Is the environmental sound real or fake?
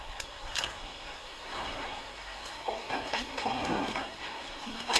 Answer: fake